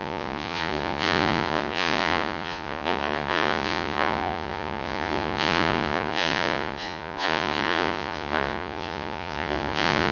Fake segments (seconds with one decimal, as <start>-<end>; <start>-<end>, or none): 0.0-10.1